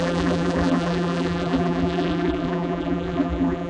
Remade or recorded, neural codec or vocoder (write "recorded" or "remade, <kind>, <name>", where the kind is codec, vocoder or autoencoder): remade, vocoder, BigVGAN v2